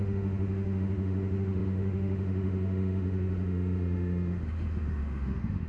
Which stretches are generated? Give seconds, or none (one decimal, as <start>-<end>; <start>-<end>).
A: 0.0-5.7